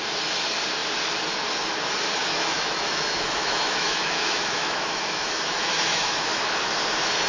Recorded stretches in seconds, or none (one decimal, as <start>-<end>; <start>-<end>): 0.0-2.2; 6.4-7.3